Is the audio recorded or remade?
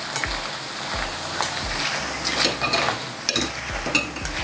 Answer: recorded